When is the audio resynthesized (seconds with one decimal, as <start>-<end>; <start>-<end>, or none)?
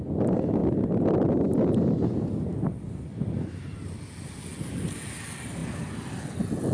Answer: 0.6-4.4